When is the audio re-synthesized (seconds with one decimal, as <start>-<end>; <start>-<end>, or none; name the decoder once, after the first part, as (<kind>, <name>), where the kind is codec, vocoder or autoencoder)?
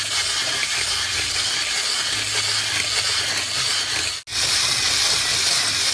0.4-1.3 (vocoder, BigVGAN v2)